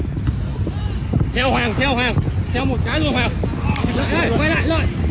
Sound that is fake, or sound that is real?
real